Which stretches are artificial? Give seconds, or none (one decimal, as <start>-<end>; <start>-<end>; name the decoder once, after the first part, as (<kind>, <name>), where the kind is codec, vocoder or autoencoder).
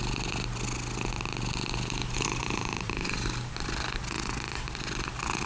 2.0-3.5 (vocoder, BigVGAN v2)